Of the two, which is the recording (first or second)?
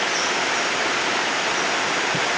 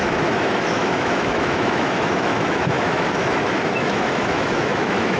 first